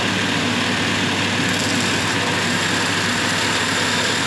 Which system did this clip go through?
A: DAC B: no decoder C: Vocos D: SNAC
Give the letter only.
B